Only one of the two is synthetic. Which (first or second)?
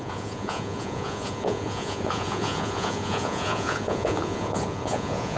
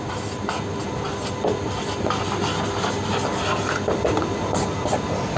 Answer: first